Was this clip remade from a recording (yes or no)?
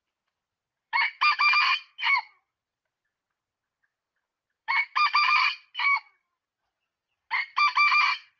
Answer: yes